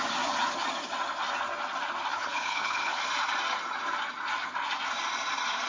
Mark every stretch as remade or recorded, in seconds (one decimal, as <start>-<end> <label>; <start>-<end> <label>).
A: 0.0-2.1 recorded; 2.1-3.0 remade; 3.0-5.7 recorded